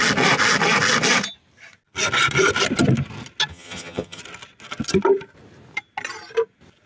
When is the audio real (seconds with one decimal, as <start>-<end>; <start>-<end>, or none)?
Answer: 0.0-3.5; 4.2-6.9

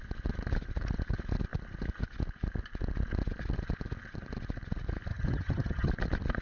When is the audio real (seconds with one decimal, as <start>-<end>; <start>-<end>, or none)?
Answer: 0.0-5.1; 5.9-6.4

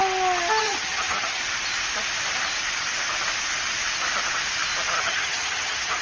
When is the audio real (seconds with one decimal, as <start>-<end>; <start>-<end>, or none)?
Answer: 0.0-0.6; 1.4-5.0

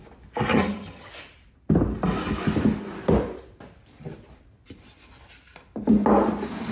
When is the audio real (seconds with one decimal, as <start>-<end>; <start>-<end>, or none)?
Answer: 0.0-0.5; 1.1-6.7